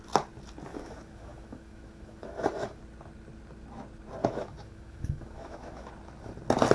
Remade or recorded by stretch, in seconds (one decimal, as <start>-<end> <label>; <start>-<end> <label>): 0.0-0.7 recorded; 0.7-2.8 remade; 2.8-4.2 recorded; 4.2-5.9 remade; 5.9-6.7 recorded